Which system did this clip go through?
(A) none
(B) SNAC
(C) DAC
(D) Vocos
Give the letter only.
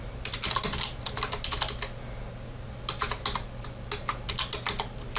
A